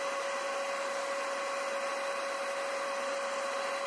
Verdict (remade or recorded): recorded